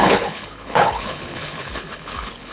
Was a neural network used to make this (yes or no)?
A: yes